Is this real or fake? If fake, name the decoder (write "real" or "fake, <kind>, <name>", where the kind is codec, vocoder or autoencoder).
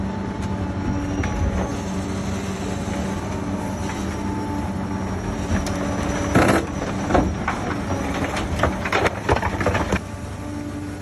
real